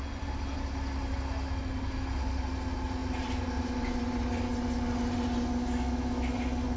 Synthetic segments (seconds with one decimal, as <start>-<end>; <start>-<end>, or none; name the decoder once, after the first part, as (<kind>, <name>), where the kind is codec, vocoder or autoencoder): 5.6-6.3 (autoencoder, DAC-VAE)